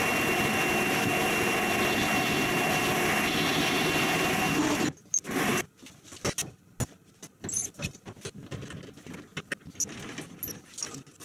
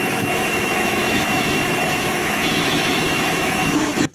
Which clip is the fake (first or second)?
second